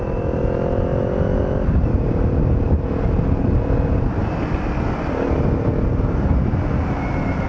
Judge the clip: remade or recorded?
recorded